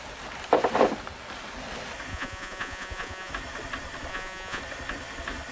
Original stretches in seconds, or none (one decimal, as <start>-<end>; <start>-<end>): 0.0-2.1; 3.3-4.1; 4.6-5.5